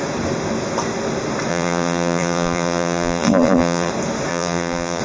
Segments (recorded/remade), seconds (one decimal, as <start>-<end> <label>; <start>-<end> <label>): 0.0-1.5 recorded; 1.5-3.9 remade; 3.9-4.3 recorded; 4.3-5.0 remade